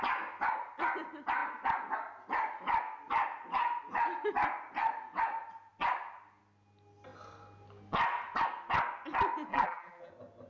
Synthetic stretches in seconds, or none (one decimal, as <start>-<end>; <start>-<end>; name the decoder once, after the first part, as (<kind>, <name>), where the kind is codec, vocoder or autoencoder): 9.5-10.1 (vocoder, BigVGAN v2)